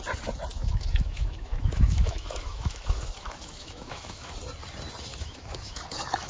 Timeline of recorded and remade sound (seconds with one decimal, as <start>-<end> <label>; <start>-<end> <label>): 0.0-0.5 recorded; 0.5-4.3 remade; 4.3-5.1 recorded; 5.1-6.3 remade